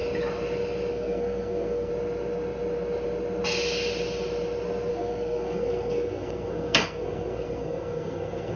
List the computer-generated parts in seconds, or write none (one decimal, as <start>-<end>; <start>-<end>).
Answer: 0.9-1.9; 4.9-8.6